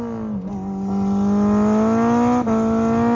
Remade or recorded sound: recorded